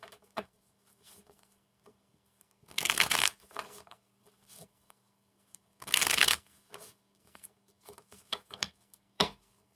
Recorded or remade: remade